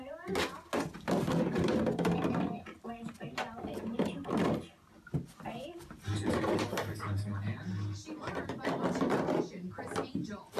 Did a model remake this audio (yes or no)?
no